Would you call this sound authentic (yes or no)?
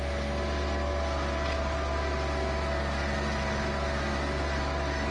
yes